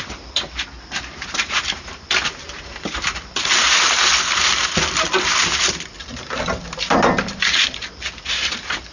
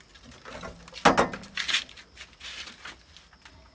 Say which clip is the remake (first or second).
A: first